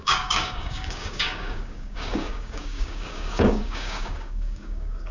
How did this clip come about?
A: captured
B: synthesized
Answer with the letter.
B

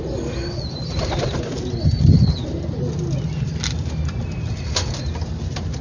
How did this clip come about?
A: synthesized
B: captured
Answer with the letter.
B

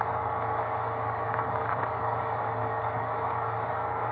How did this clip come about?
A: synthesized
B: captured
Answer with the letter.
A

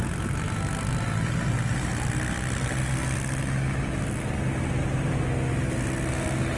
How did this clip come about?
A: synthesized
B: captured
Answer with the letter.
B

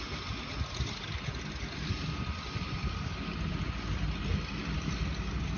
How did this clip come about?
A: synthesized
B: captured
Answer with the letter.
B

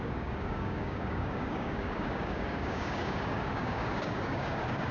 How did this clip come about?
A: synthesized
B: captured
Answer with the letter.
A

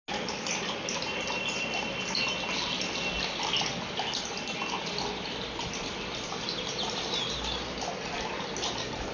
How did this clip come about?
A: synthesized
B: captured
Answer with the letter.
B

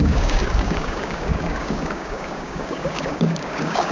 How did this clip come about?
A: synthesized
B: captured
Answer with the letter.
A